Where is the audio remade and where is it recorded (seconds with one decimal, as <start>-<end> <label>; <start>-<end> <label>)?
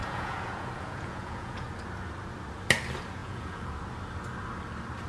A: 0.0-1.7 remade; 1.7-3.2 recorded; 3.2-3.7 remade; 3.7-5.1 recorded